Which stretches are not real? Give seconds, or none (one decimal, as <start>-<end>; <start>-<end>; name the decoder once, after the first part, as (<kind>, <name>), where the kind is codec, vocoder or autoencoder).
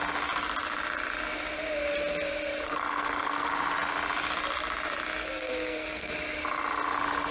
2.6-3.5 (codec, SNAC); 5.2-6.1